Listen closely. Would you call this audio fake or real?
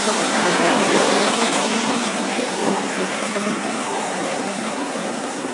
fake